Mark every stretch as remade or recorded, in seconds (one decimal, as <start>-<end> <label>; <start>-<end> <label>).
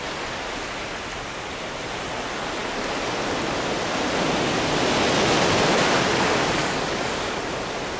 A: 0.0-6.6 recorded; 6.6-7.4 remade; 7.4-8.0 recorded